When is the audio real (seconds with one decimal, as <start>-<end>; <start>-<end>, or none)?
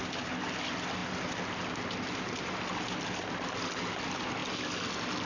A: 0.0-5.3